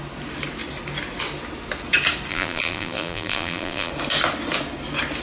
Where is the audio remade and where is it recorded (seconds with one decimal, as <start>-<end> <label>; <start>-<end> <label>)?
0.0-2.3 recorded; 2.3-3.9 remade; 3.9-5.2 recorded